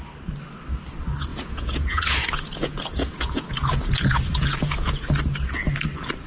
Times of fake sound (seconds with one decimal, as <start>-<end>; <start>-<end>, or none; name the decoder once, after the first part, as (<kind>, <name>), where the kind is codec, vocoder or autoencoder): 1.3-5.1 (vocoder, Vocos)